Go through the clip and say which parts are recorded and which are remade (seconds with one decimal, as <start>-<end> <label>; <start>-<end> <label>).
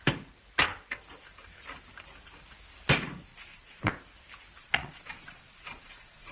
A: 0.0-3.3 recorded; 3.3-3.9 remade; 3.9-4.6 recorded; 4.6-6.3 remade